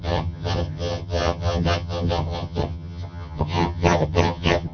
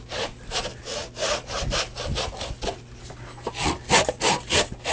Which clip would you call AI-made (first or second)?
first